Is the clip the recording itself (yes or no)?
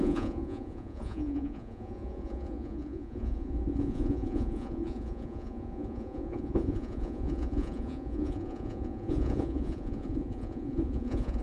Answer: no